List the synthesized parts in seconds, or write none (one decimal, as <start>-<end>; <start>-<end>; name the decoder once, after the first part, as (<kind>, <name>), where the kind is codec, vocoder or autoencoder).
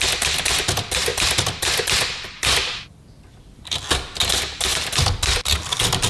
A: 1.1-3.8 (vocoder, BigVGAN v2); 4.7-6.1